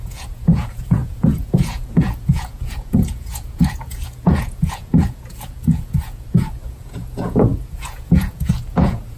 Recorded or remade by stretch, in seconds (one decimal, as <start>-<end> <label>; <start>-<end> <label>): 0.0-9.2 remade